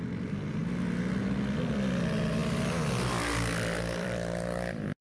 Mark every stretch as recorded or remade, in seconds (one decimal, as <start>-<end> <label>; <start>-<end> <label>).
0.0-2.4 recorded; 2.4-5.0 remade